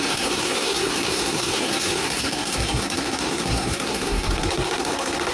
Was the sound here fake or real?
fake